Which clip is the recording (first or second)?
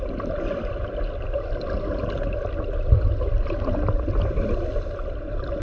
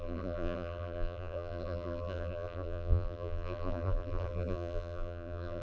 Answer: first